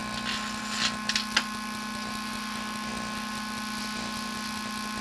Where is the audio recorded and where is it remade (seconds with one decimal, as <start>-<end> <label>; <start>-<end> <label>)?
0.0-5.0 recorded